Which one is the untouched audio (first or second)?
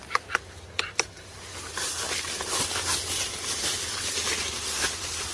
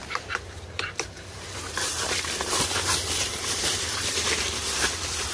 first